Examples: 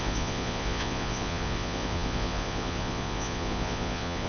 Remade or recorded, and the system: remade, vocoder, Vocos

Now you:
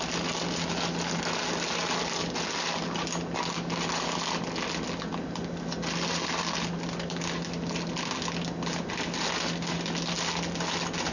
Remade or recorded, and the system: recorded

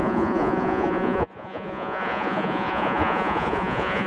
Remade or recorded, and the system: remade, vocoder, Vocos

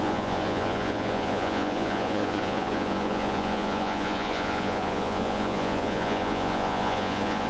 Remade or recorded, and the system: remade, vocoder, Vocos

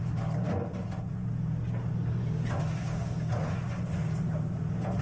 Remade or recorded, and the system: recorded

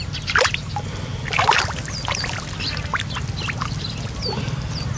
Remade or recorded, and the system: recorded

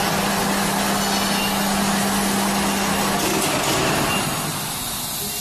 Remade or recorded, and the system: recorded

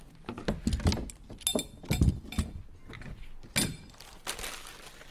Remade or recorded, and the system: recorded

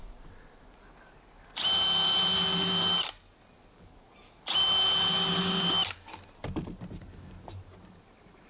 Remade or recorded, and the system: recorded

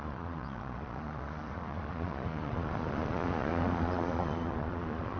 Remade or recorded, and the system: remade, vocoder, Vocos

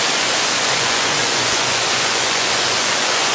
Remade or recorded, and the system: remade, vocoder, Vocos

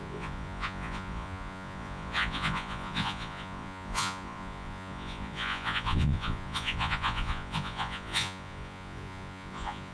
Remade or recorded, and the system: remade, vocoder, Vocos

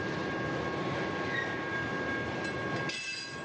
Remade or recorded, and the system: recorded